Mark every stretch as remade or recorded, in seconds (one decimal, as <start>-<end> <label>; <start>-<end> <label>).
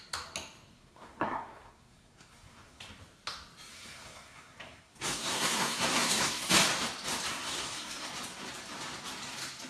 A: 0.0-0.7 recorded; 0.7-2.8 remade; 2.8-3.7 recorded; 3.7-6.5 remade; 6.5-7.3 recorded; 7.3-8.1 remade; 8.1-9.7 recorded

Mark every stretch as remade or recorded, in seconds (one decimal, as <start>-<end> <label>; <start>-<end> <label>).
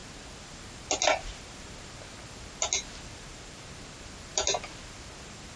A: 0.0-5.6 recorded